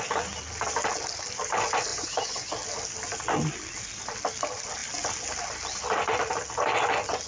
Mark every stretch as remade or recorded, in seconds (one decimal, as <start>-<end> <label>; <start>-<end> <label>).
0.0-1.9 recorded; 1.9-2.5 remade; 2.5-7.3 recorded